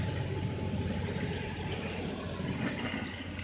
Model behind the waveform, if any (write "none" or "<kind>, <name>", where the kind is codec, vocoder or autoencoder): none